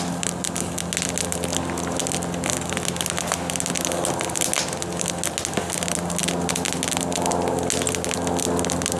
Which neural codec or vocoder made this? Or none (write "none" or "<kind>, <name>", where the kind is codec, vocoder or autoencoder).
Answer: none